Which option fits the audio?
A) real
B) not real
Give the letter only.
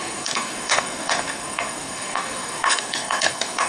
B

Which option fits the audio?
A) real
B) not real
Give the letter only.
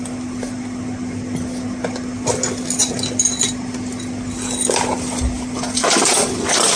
A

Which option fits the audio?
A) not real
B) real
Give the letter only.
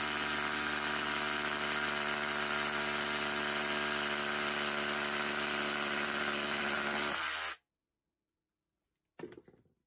B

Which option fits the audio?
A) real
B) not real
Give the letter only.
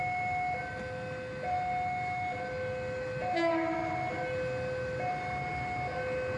A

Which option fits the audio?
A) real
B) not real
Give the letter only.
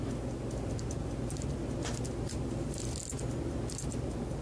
A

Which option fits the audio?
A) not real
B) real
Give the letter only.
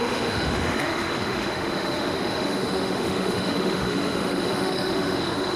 A